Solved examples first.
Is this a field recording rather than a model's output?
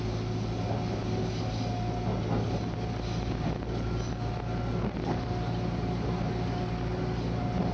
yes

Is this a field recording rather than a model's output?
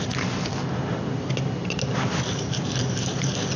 yes